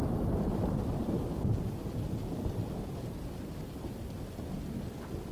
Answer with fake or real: real